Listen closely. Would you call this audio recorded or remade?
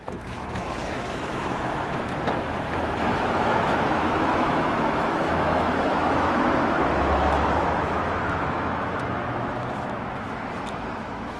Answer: remade